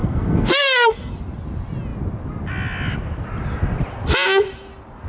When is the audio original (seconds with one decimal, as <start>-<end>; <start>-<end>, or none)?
1.1-5.1